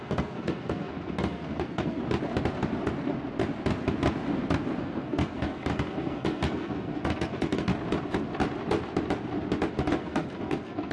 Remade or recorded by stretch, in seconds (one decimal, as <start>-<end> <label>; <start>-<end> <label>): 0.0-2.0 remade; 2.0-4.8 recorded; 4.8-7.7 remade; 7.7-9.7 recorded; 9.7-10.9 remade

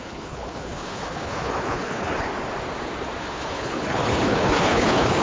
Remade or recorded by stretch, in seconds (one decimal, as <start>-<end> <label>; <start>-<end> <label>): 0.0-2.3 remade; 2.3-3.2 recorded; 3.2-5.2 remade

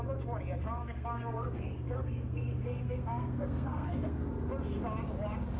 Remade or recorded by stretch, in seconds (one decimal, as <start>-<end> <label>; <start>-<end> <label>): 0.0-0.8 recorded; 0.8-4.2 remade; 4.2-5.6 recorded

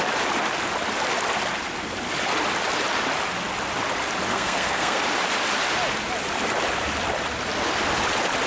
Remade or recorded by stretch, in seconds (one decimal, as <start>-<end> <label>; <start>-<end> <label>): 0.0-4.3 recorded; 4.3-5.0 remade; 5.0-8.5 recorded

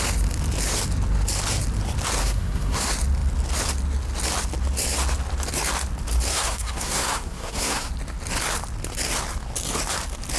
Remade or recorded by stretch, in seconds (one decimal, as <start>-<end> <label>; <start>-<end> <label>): 0.0-2.2 recorded; 2.2-2.8 remade; 2.8-6.3 recorded; 6.3-7.9 remade; 7.9-10.4 recorded